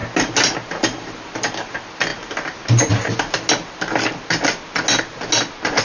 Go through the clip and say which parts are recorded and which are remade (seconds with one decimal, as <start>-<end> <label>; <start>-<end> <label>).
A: 0.0-5.8 recorded